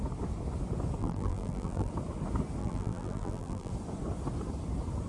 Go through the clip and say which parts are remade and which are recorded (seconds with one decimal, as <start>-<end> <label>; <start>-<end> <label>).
0.0-1.0 recorded; 1.0-1.9 remade; 1.9-2.6 recorded; 2.6-3.7 remade; 3.7-5.1 recorded